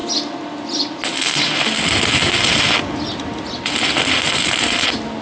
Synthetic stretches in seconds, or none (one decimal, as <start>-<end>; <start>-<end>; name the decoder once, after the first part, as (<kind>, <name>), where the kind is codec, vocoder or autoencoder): none